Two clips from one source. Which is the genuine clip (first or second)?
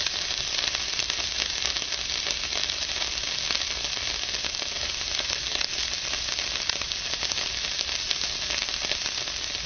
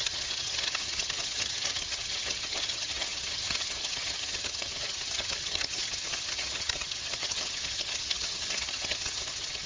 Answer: first